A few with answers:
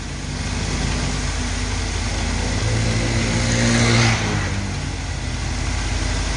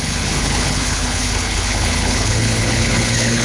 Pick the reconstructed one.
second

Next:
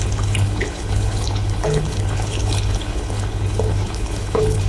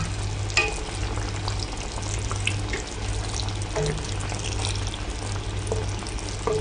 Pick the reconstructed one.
first